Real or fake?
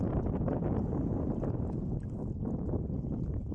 real